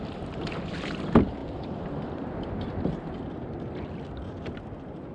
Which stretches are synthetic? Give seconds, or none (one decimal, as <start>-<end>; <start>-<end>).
none